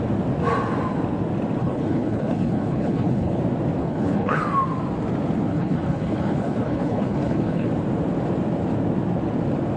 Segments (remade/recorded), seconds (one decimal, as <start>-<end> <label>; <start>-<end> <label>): 0.0-1.6 recorded; 1.6-3.4 remade; 3.4-3.8 recorded; 3.8-4.4 remade; 4.4-5.5 recorded; 5.5-7.7 remade; 7.7-9.8 recorded